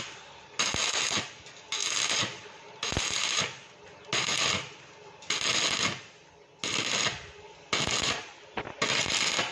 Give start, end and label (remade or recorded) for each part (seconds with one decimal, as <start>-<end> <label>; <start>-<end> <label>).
0.0-9.5 recorded